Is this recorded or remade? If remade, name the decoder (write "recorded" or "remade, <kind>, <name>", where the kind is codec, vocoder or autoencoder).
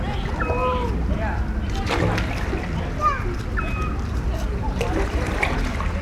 recorded